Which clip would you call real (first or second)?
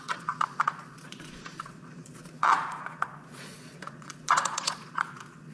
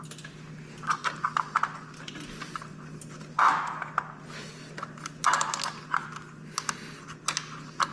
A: second